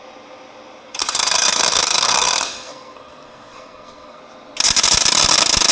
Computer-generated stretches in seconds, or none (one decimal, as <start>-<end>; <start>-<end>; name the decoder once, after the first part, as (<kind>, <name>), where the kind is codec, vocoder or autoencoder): 0.8-4.2 (codec, SNAC)

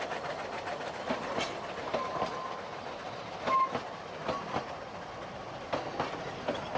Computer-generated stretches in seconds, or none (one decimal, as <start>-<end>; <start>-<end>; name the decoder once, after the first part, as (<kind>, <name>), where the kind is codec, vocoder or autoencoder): none

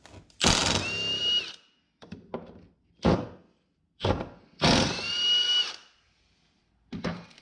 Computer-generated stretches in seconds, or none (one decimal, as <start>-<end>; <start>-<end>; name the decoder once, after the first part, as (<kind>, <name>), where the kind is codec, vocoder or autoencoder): none

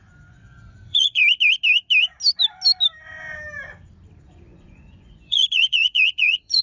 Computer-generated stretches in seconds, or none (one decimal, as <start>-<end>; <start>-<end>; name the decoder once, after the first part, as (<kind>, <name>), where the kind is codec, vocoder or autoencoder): 0.0-1.2 (vocoder, Vocos); 4.2-6.6